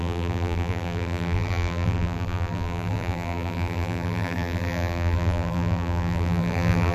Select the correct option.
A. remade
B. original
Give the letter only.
A